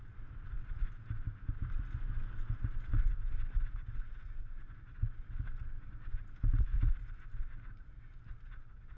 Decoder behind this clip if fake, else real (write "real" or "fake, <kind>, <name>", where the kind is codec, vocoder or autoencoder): real